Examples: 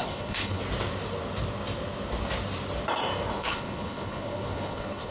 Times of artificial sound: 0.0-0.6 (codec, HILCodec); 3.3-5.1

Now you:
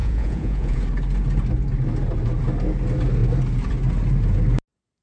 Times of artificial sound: 0.0-0.8 (vocoder, Vocos)

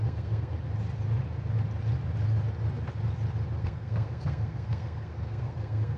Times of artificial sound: 0.0-0.5 (codec, SNAC); 3.6-6.0

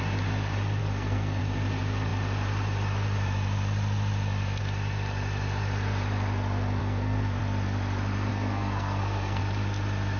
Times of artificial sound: 0.8-1.4 (codec, SNAC); 6.8-7.4; 8.3-9.4

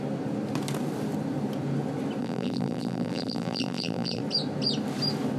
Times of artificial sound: 2.2-4.2 (vocoder, BigVGAN v2)

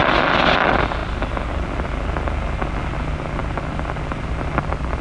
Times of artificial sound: none